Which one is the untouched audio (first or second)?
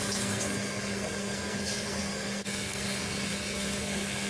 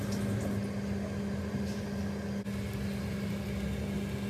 second